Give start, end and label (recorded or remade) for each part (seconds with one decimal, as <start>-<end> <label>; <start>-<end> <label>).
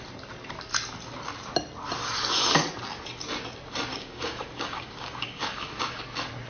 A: 0.0-3.9 recorded; 3.9-6.0 remade; 6.0-6.5 recorded